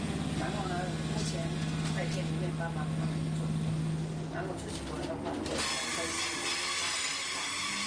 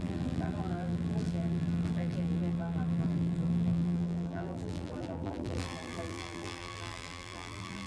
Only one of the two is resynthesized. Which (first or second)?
second